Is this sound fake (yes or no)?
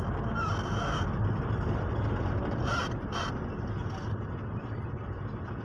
no